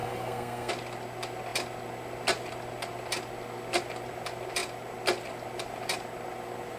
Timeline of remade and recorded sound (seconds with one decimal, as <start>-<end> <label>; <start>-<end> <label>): 0.0-0.7 remade; 0.7-6.8 recorded